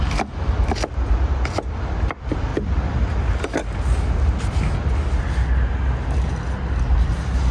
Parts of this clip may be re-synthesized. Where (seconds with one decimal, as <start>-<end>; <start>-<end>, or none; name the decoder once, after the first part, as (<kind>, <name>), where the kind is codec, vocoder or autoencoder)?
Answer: none